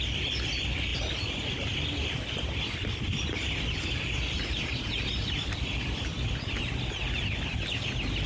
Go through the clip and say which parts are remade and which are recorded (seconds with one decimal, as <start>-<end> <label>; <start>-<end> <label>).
0.0-8.3 recorded